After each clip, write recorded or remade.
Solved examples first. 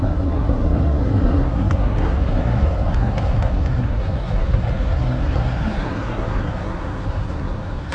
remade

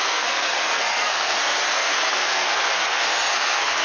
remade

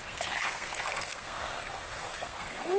remade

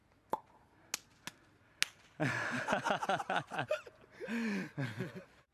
recorded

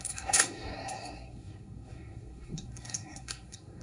remade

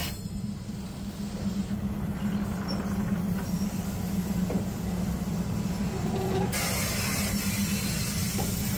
recorded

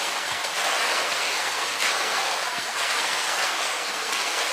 remade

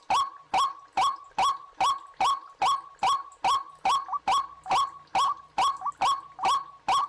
recorded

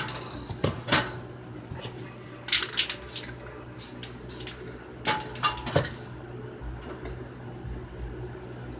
recorded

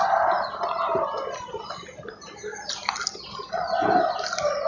recorded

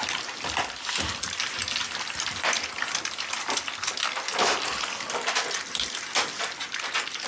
recorded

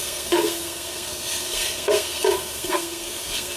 remade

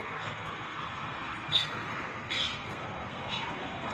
remade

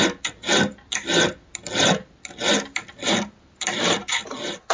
recorded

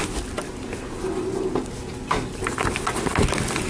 recorded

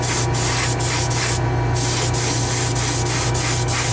recorded